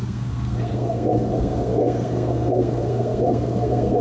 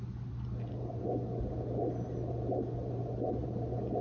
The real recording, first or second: second